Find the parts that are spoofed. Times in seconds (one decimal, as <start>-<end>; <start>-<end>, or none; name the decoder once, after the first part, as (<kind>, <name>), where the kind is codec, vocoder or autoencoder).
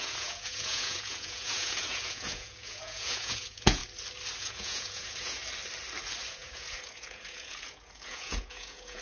0.0-3.8 (vocoder, Vocos); 4.4-5.4; 6.3-9.0